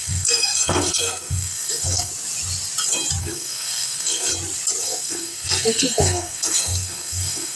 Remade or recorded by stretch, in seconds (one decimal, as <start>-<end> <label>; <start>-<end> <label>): 0.0-2.1 remade; 2.1-3.2 recorded; 3.2-4.3 remade; 4.3-4.8 recorded; 4.8-7.6 remade